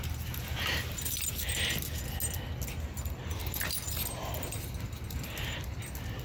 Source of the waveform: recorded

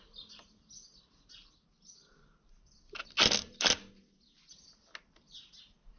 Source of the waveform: recorded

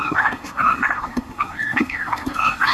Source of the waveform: remade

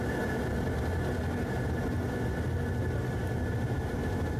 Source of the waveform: recorded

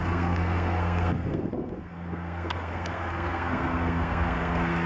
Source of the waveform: remade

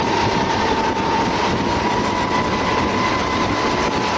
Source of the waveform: recorded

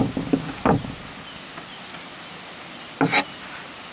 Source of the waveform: recorded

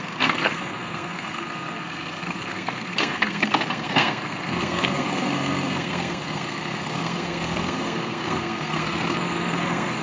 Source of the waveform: remade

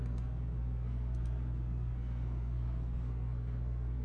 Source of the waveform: remade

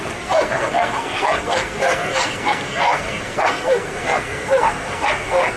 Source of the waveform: remade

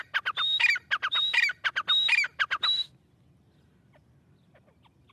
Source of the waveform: recorded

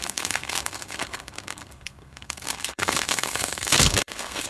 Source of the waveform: remade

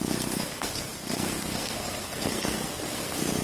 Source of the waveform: remade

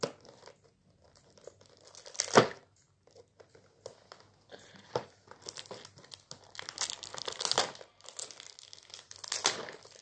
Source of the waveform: recorded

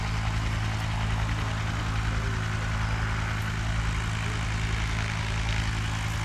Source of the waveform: recorded